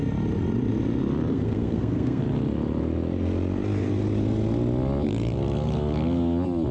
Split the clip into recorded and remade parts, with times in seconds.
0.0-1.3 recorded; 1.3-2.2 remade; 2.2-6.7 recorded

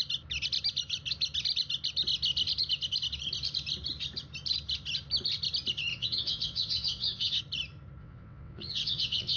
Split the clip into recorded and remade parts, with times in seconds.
0.0-5.9 recorded; 5.9-7.4 remade; 7.4-8.0 recorded; 8.0-9.4 remade

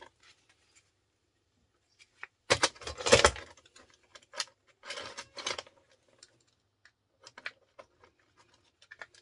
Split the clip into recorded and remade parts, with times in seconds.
0.0-9.2 recorded

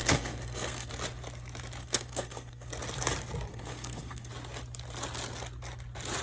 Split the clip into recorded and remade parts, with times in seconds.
0.0-0.9 remade; 0.9-1.8 recorded; 1.8-2.7 remade; 2.7-3.5 recorded; 3.5-4.3 remade; 4.3-6.2 recorded

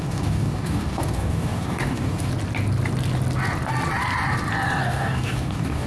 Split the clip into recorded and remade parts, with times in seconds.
0.0-2.3 remade; 2.3-4.8 recorded; 4.8-5.9 remade

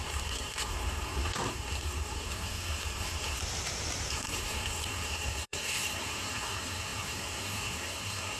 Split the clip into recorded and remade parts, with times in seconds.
0.0-3.4 remade; 3.4-4.1 recorded; 4.1-8.4 remade

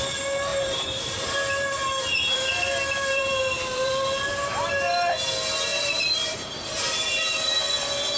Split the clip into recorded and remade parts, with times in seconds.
0.0-0.5 recorded; 0.5-4.7 remade; 4.7-5.7 recorded; 5.7-7.7 remade; 7.7-8.2 recorded